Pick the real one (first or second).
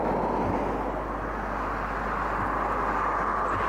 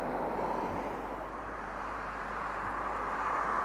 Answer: first